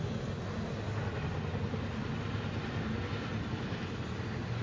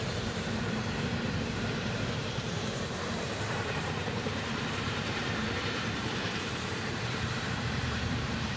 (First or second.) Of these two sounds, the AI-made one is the second